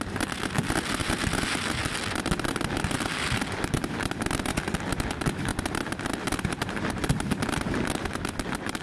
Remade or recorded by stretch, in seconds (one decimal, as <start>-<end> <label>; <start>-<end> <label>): 0.0-8.8 recorded